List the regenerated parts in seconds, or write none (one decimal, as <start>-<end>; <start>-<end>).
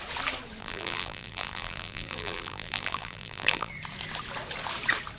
0.6-3.7